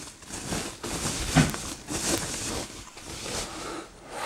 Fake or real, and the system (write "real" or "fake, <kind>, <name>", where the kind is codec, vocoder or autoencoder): real